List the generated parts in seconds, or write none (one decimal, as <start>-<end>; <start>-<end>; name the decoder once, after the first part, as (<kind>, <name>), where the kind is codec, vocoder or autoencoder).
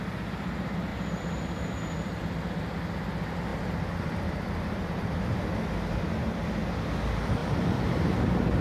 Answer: 0.9-1.9 (vocoder, BigVGAN v2); 3.5-5.4; 7.4-8.2